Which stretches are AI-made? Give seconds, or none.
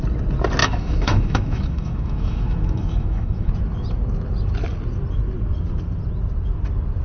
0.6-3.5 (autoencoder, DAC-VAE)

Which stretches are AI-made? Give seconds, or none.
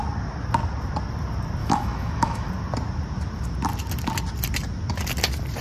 1.6-2.5 (autoencoder, DAC-VAE)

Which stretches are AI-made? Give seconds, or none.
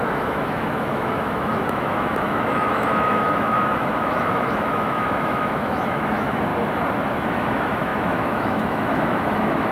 0.0-6.5 (autoencoder, DAC-VAE); 7.2-9.7